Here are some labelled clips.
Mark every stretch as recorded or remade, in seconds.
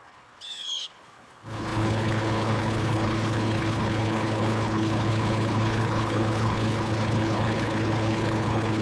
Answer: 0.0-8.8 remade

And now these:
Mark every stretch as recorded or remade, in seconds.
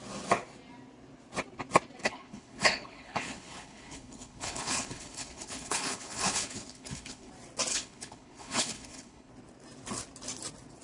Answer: 0.0-2.0 recorded; 2.0-7.3 remade; 7.3-7.7 recorded; 7.7-9.3 remade; 9.3-10.8 recorded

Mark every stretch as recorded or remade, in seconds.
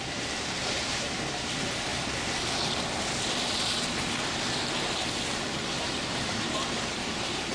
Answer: 0.0-1.9 remade; 1.9-6.1 recorded; 6.1-7.5 remade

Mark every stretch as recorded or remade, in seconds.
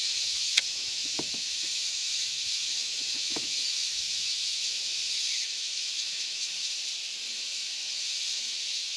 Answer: 0.0-6.8 remade; 6.8-7.3 recorded; 7.3-9.0 remade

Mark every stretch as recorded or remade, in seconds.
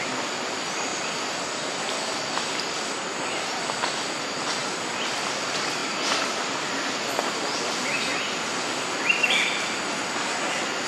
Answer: 0.0-10.9 recorded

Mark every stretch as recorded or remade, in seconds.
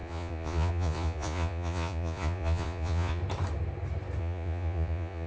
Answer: 0.0-3.2 remade; 3.2-4.2 recorded; 4.2-5.3 remade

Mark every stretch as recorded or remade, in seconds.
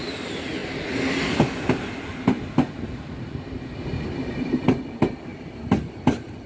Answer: 0.0-6.5 recorded